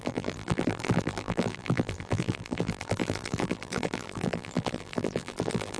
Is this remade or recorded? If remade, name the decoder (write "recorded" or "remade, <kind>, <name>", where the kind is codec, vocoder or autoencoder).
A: remade, vocoder, BigVGAN v2